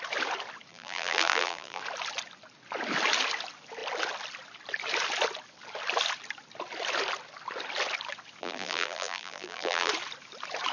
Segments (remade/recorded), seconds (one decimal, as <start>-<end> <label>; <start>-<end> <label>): 0.0-0.7 recorded; 0.7-1.8 remade; 1.8-8.4 recorded; 8.4-9.9 remade; 9.9-10.7 recorded